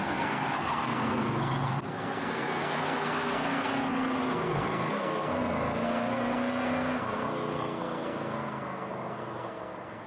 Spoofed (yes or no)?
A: yes